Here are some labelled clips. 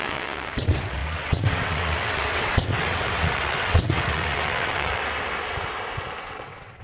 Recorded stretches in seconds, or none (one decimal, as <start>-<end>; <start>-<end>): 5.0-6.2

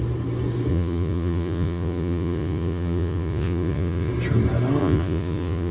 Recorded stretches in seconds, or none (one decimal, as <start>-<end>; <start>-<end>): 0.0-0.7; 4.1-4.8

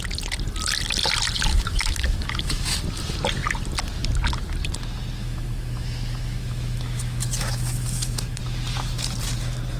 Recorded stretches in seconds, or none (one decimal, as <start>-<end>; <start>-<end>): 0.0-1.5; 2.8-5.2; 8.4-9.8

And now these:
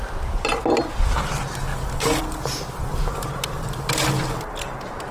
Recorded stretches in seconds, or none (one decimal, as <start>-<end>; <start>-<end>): 0.0-5.1